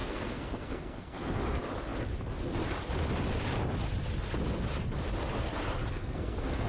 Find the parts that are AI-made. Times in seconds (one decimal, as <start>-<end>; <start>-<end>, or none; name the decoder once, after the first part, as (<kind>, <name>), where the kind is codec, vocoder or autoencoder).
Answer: 0.0-1.4 (codec, SNAC); 5.8-6.7